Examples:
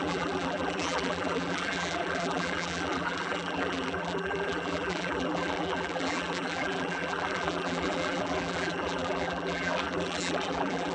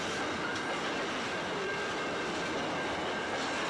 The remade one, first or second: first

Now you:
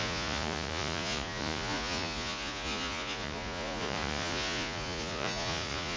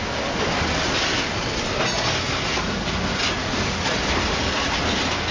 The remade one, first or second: first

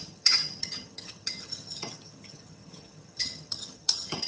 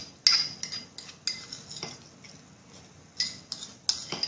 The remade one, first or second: first